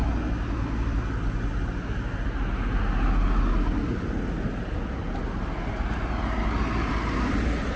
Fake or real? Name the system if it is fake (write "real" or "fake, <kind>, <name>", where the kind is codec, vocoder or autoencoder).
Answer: real